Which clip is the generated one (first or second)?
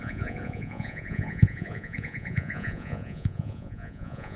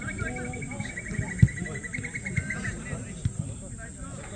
first